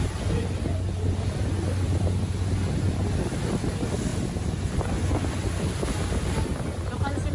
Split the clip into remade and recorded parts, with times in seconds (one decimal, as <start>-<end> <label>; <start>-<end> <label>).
0.0-4.1 recorded; 4.1-5.0 remade; 5.0-7.3 recorded